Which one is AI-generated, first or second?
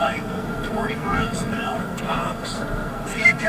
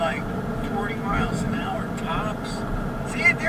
first